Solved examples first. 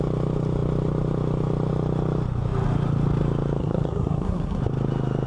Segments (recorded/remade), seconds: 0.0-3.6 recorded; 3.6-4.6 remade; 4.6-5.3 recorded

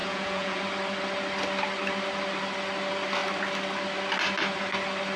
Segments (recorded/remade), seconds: 0.0-0.6 remade; 0.6-5.2 recorded

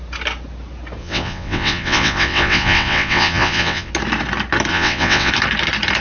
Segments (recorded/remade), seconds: 0.0-1.0 recorded; 1.0-3.9 remade; 3.9-4.7 recorded; 4.7-5.3 remade; 5.3-6.0 recorded

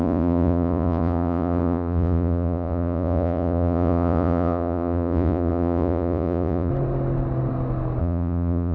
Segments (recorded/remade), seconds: 0.0-6.7 remade; 6.7-8.0 recorded; 8.0-8.7 remade

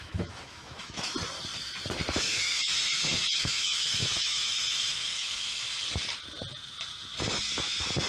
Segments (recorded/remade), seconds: 0.0-1.1 remade; 1.1-2.2 recorded; 2.2-5.6 remade; 5.6-8.1 recorded

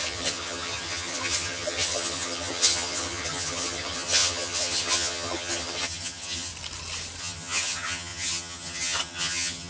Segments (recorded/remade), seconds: 0.0-6.5 remade; 6.5-7.2 recorded; 7.2-9.7 remade